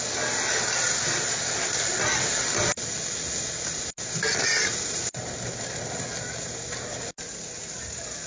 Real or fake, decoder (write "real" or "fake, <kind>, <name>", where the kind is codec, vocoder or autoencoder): real